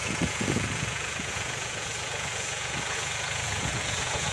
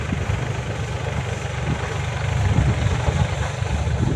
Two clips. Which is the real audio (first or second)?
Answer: second